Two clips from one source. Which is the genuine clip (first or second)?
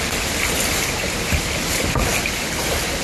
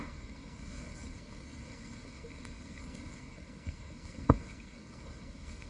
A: first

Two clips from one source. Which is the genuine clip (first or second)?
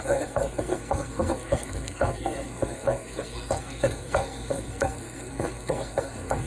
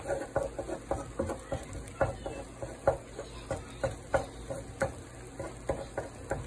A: second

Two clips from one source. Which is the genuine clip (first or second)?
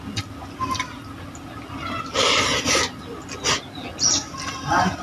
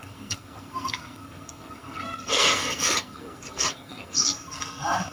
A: first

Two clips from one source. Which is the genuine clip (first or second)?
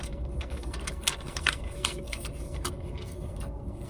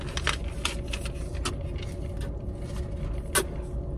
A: second